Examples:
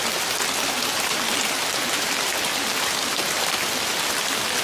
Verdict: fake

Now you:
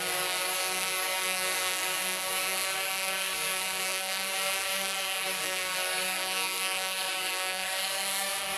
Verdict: fake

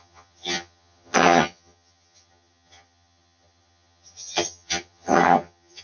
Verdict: fake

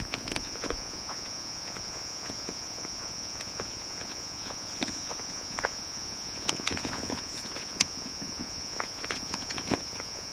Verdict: fake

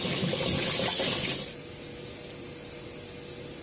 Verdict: real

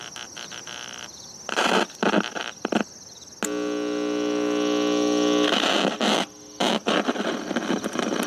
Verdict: real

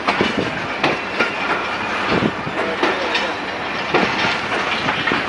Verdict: real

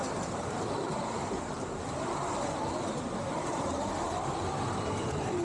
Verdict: fake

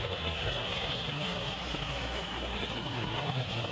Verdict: fake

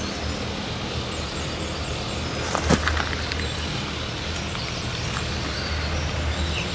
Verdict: real